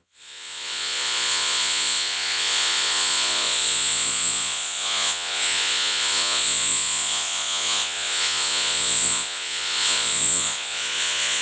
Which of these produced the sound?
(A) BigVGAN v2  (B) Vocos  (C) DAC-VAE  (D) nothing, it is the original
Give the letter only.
B